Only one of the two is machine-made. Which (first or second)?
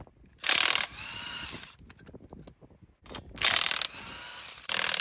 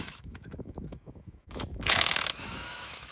second